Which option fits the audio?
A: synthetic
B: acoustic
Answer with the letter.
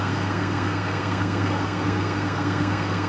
A